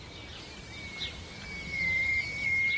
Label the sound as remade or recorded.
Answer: recorded